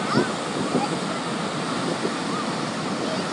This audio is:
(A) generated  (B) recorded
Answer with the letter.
B